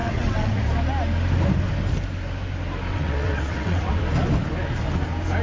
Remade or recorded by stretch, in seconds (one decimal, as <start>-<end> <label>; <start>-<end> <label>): 0.0-0.6 remade; 0.6-2.9 recorded; 2.9-4.0 remade; 4.0-5.4 recorded